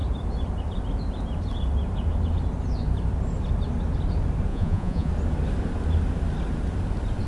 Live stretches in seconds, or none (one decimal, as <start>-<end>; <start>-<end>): 0.0-4.5; 5.1-7.3